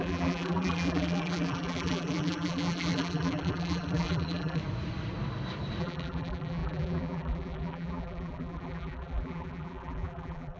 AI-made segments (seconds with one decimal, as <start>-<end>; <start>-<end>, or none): 0.0-4.6; 5.8-10.6